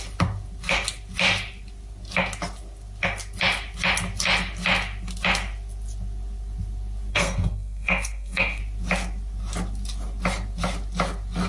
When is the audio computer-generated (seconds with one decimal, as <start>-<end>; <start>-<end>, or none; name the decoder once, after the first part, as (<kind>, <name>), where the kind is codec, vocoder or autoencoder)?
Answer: 7.1-8.6 (codec, SNAC)